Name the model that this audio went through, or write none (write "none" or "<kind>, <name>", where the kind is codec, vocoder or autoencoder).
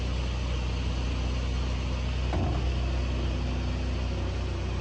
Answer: none